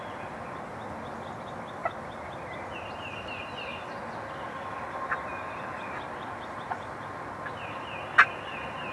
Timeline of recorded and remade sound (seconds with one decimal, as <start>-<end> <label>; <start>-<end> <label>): 0.0-8.9 recorded